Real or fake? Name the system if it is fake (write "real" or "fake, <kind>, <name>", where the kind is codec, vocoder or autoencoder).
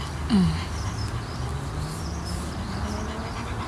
real